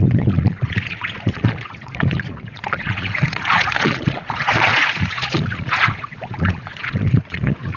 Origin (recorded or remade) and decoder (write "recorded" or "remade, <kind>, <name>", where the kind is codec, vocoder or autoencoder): remade, vocoder, Vocos